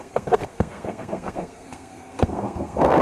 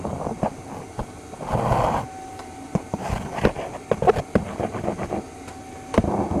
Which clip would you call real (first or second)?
second